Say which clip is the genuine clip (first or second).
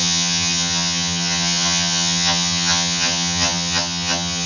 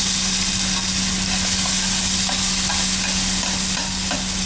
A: second